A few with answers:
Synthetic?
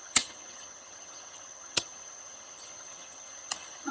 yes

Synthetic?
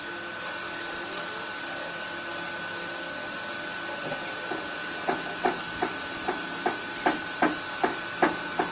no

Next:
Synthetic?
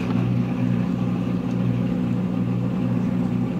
no